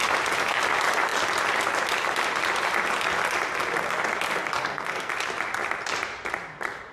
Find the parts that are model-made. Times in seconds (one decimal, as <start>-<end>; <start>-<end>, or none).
4.6-5.1